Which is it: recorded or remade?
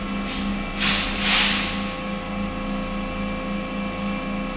recorded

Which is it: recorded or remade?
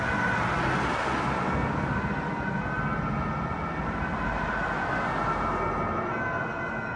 recorded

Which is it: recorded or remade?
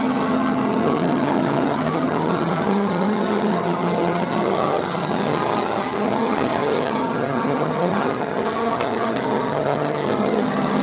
remade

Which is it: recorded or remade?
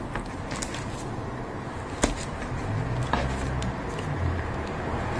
recorded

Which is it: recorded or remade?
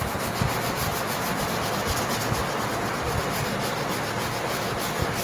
recorded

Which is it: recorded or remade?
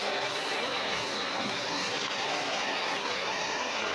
remade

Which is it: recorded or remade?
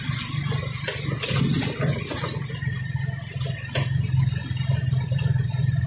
recorded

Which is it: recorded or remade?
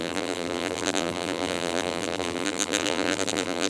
remade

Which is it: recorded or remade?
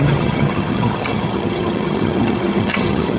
remade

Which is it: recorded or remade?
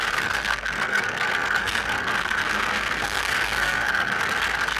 remade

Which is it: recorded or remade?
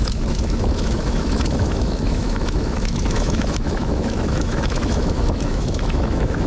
remade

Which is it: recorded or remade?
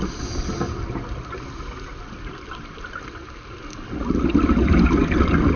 recorded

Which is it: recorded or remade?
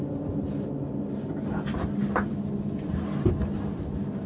recorded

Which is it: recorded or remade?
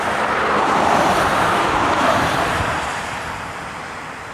remade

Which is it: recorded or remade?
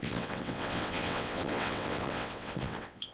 remade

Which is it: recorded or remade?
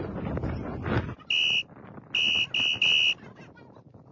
recorded